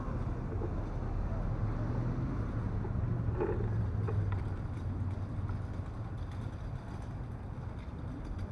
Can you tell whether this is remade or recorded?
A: recorded